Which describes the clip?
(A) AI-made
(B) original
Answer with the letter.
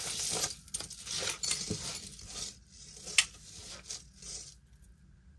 B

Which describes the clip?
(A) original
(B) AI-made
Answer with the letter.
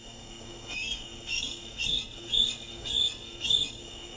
B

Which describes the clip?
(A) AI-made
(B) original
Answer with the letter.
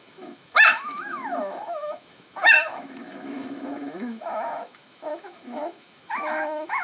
A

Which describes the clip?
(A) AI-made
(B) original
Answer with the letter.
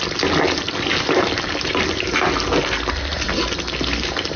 B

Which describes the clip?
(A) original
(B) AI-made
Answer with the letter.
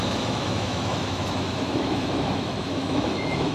B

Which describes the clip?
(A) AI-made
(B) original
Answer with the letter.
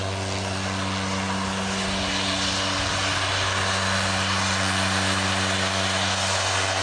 B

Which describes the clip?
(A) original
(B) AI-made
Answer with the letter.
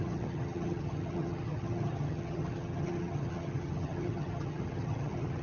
B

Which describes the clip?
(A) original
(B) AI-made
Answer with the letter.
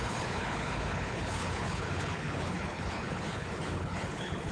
B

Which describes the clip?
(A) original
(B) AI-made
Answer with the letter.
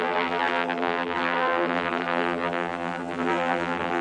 B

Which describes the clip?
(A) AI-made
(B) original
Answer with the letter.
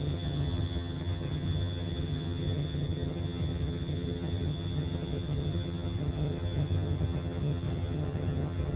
A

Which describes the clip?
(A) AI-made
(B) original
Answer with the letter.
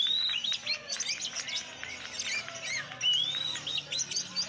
B